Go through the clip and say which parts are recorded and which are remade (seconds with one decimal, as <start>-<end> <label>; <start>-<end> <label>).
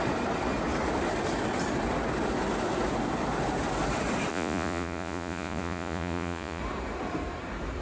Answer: 0.0-4.3 recorded; 4.3-6.6 remade; 6.6-7.8 recorded